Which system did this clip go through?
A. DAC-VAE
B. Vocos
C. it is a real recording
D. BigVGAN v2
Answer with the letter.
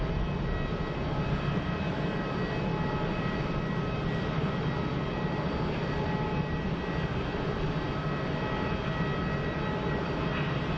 C